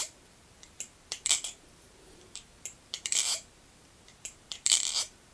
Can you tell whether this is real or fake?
fake